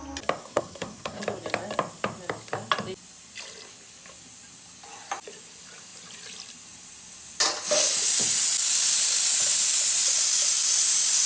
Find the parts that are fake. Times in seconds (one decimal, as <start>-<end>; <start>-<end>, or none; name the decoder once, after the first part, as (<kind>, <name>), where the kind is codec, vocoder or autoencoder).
0.4-1.2 (codec, SNAC)